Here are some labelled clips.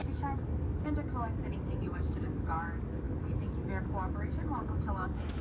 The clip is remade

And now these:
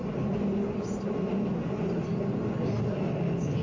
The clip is recorded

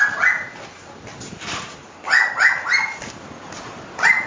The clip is recorded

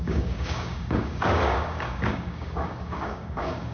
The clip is remade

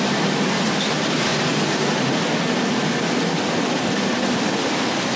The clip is recorded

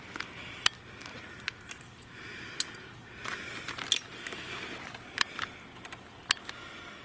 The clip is recorded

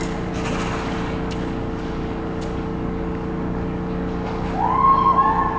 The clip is remade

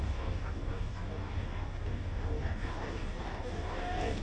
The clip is remade